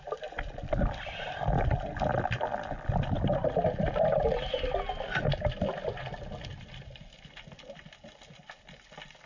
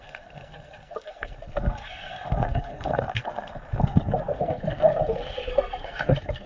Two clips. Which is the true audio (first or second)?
first